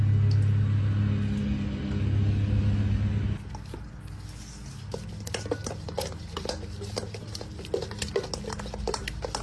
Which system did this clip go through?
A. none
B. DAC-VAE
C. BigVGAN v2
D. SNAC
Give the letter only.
A